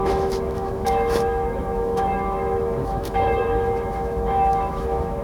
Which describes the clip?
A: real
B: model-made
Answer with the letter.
B